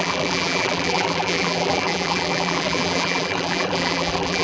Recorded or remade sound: remade